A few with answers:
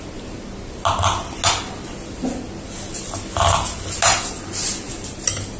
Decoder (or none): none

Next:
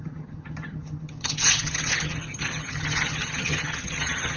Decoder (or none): vocoder, HiFi-GAN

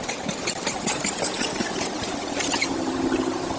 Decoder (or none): none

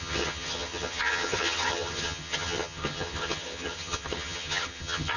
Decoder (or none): vocoder, HiFi-GAN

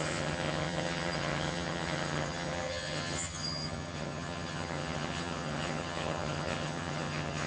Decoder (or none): vocoder, HiFi-GAN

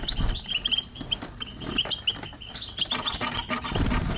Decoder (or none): none